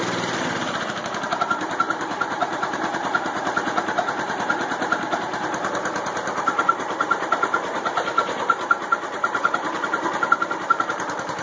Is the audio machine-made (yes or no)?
yes